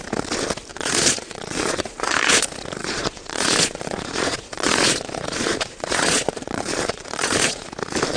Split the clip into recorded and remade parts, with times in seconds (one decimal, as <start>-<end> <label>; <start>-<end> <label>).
0.0-0.7 recorded; 0.7-2.4 remade; 2.4-2.8 recorded; 2.8-7.7 remade; 7.7-8.2 recorded